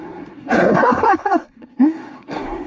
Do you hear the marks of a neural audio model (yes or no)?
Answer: yes